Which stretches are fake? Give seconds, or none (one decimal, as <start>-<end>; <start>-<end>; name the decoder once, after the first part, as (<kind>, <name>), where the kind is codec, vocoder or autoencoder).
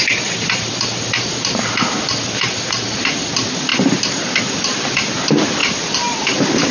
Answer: none